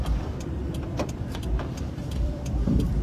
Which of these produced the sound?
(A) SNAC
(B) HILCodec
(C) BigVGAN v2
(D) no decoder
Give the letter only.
C